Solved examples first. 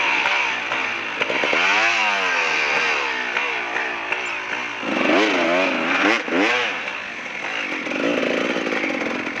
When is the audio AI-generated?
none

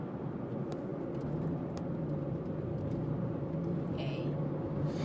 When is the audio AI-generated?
none

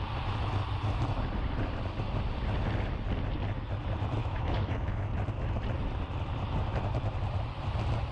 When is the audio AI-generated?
4.2-5.1

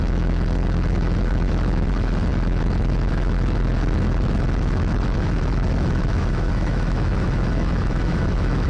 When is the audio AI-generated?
0.0-8.7